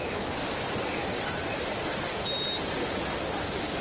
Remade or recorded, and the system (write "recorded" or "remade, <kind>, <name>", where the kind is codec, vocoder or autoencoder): recorded